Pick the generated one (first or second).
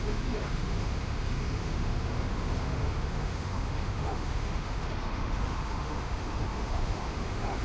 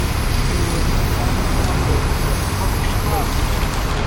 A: first